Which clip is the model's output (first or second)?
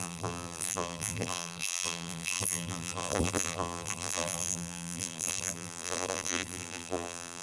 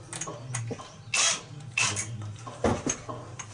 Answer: first